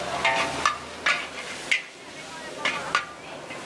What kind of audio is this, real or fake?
real